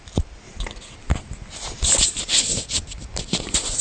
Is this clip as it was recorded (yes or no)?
yes